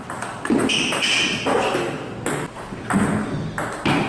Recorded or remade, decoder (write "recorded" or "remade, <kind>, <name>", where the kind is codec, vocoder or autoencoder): recorded